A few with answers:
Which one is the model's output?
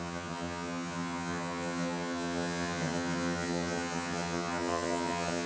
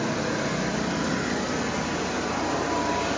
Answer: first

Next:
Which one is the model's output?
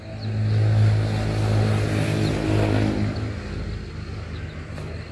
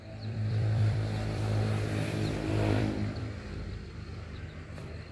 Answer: second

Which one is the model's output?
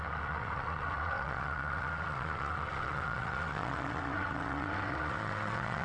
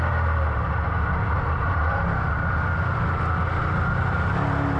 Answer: first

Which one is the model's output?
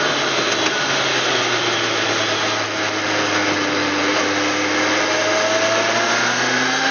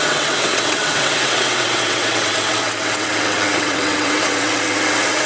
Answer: second